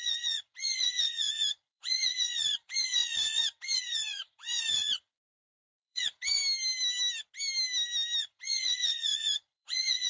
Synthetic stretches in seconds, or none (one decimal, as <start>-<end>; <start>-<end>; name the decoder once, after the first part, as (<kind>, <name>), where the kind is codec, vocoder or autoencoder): 0.0-6.4 (vocoder, Vocos); 8.2-10.1